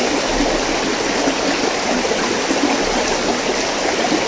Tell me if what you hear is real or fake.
real